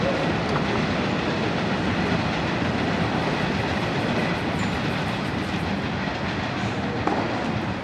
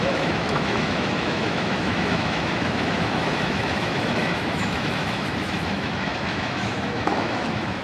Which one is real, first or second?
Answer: first